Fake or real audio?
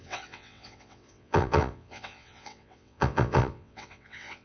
fake